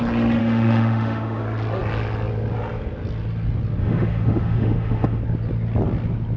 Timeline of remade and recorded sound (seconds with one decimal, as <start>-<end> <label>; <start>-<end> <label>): 0.0-0.4 recorded; 0.4-1.4 remade; 1.4-3.8 recorded; 3.8-5.2 remade; 5.2-6.4 recorded